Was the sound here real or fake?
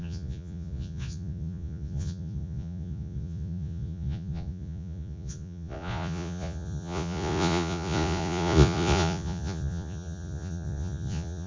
fake